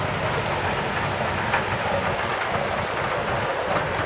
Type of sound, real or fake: real